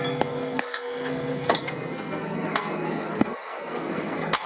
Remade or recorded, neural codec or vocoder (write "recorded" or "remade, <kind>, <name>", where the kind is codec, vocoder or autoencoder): remade, codec, SNAC